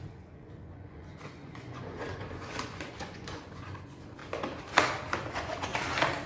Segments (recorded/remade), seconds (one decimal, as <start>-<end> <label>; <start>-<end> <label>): 0.0-4.2 remade; 4.2-5.3 recorded; 5.3-5.7 remade; 5.7-6.3 recorded